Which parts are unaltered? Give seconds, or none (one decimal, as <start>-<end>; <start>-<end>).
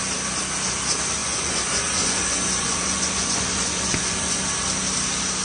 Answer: 0.0-1.2; 4.4-5.4